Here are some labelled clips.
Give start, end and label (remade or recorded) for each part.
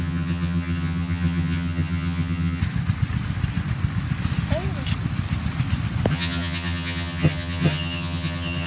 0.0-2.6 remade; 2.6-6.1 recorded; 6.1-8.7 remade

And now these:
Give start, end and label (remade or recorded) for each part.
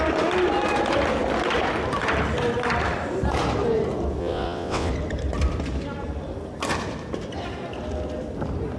0.0-4.2 recorded; 4.2-4.9 remade; 4.9-8.8 recorded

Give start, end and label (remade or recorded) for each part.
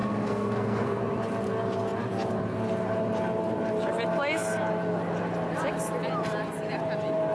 0.0-1.0 remade; 1.0-7.3 recorded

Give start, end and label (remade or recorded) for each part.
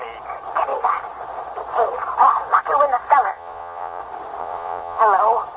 0.0-3.3 recorded; 3.3-4.0 remade; 4.0-4.4 recorded; 4.4-5.0 remade; 5.0-5.6 recorded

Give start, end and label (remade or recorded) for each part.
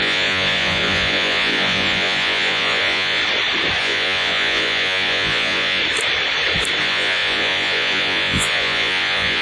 0.0-3.2 remade; 3.2-3.8 recorded; 3.8-5.8 remade; 5.8-6.8 recorded; 6.8-9.4 remade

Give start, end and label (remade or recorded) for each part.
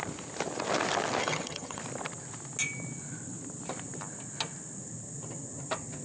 0.0-1.2 recorded; 1.2-1.8 remade; 1.8-6.0 recorded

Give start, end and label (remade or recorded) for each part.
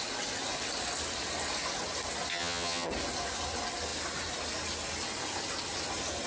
0.0-2.3 recorded; 2.3-2.9 remade; 2.9-6.3 recorded